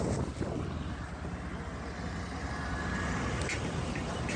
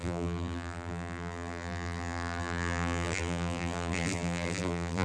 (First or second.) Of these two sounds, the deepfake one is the second